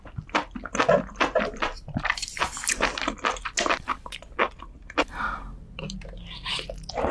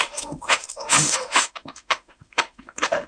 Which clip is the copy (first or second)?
second